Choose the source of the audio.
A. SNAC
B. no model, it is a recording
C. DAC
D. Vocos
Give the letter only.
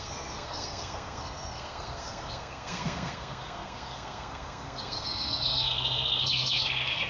A